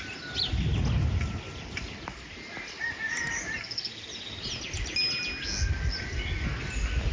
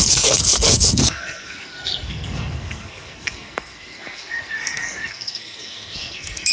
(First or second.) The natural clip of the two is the first